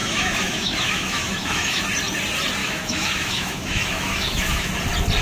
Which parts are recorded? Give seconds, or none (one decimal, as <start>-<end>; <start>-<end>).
1.8-2.6; 4.7-5.2